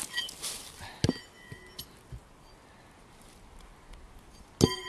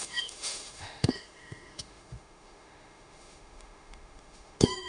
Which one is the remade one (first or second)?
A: second